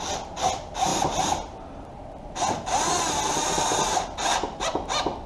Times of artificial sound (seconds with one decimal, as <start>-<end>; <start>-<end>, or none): none